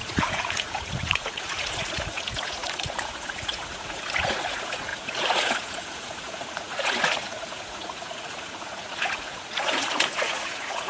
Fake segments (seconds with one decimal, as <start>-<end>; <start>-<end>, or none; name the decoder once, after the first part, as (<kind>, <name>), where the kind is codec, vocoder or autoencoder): 0.0-10.9 (vocoder, Vocos)